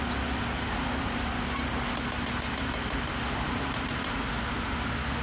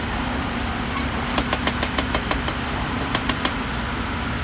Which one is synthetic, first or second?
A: second